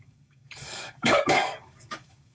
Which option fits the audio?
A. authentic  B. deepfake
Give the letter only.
B